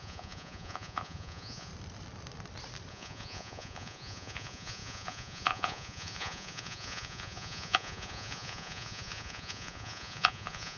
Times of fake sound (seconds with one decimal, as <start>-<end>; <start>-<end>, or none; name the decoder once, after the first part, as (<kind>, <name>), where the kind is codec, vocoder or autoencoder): 0.0-1.7 (vocoder, Vocos); 2.9-10.8